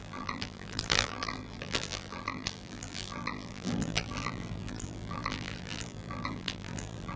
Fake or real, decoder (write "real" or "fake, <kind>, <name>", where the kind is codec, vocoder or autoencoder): fake, vocoder, BigVGAN v2